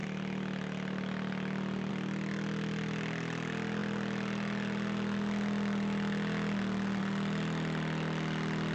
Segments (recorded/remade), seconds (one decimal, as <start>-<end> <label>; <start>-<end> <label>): 0.0-8.7 recorded